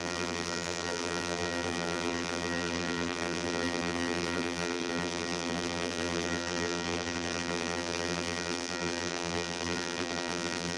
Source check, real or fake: fake